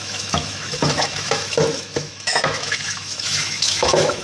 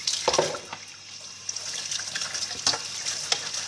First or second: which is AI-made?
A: first